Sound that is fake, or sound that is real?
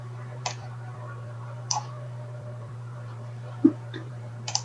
fake